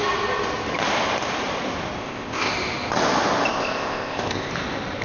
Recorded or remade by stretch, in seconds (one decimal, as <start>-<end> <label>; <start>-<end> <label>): 0.0-2.0 recorded; 2.0-2.5 remade; 2.5-3.5 recorded; 3.5-4.5 remade; 4.5-5.0 recorded